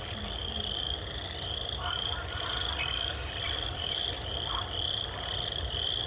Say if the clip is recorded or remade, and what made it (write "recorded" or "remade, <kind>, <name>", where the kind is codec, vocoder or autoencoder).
remade, vocoder, BigVGAN v2